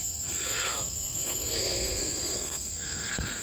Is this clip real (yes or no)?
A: no